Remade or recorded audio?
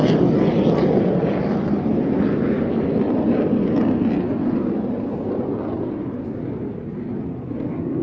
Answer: recorded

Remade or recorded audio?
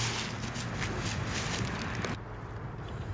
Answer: recorded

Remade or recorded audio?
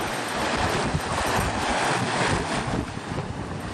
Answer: recorded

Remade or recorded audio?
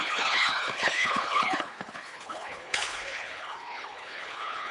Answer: remade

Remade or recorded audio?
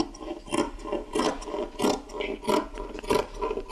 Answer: recorded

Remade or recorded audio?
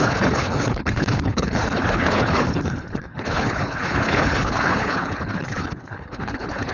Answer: remade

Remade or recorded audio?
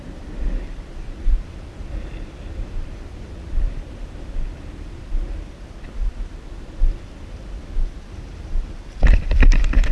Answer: remade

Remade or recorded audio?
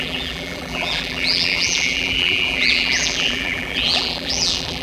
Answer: remade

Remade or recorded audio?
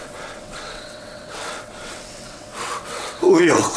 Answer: remade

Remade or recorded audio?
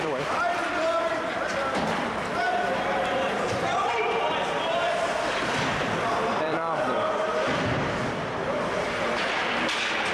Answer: remade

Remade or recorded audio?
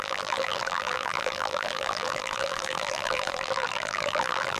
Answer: remade